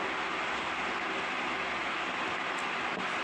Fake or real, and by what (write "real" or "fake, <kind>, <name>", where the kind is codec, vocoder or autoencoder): real